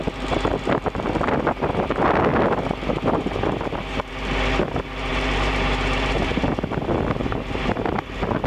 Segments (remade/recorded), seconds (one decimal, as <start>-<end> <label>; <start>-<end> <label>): 0.0-5.1 recorded; 5.1-6.4 remade; 6.4-7.2 recorded; 7.2-7.8 remade; 7.8-8.5 recorded